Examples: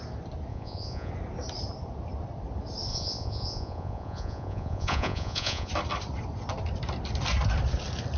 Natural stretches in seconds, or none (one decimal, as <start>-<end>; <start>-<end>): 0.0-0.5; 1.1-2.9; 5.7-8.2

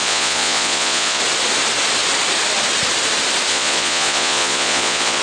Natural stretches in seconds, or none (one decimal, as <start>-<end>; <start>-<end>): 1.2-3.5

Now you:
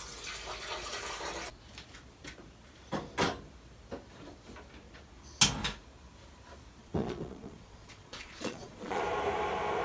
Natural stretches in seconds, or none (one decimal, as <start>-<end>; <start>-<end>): 0.0-6.8; 9.0-9.8

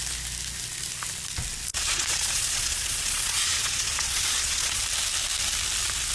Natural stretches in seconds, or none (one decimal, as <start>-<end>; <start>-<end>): 0.0-1.7; 4.8-6.1

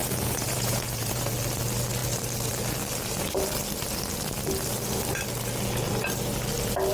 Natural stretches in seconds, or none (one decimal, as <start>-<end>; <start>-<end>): 1.3-6.9